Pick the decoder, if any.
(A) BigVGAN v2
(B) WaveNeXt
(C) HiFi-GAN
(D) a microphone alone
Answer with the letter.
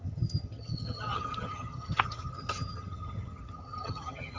C